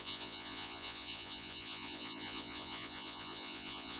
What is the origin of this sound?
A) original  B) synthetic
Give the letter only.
B